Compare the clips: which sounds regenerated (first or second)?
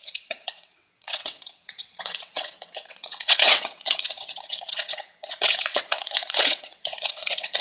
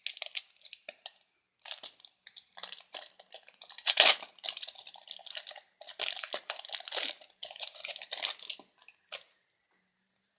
first